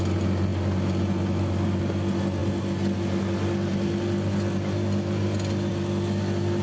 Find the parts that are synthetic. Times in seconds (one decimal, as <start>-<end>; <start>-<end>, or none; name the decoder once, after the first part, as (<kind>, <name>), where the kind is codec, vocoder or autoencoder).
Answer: none